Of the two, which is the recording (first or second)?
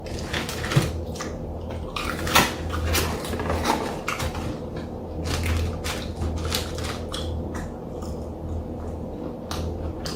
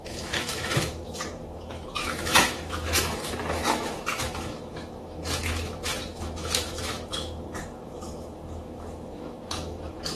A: first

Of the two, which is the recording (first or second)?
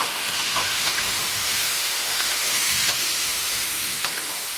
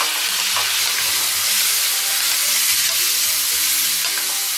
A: second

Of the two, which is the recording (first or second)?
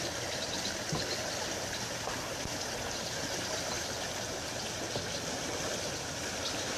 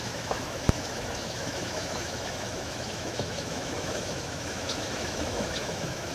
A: first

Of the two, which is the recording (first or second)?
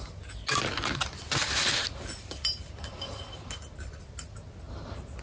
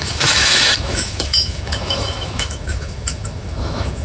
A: first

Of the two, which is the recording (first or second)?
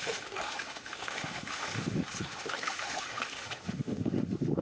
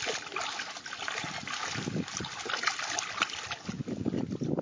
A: second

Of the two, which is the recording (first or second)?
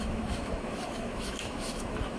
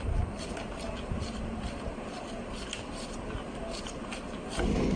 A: second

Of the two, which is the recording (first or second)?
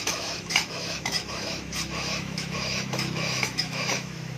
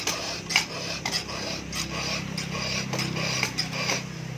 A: second